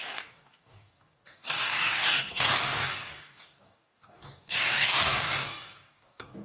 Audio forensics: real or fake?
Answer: fake